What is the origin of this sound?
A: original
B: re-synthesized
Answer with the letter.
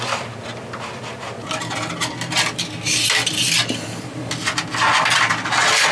A